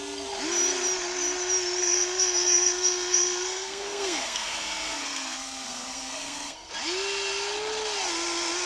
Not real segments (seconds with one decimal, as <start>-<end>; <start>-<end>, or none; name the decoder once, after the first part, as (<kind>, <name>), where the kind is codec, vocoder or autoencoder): 1.8-6.7 (codec, SNAC)